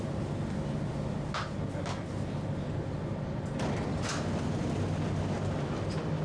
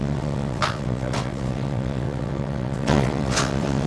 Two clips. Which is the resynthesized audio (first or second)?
second